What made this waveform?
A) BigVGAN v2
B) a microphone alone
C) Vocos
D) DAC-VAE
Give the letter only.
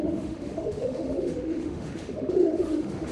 D